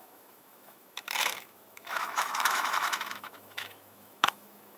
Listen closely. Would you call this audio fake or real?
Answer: fake